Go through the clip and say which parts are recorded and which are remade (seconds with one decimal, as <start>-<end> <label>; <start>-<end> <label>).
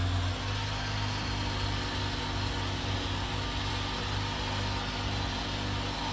0.0-6.1 recorded